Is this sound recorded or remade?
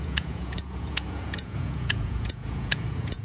remade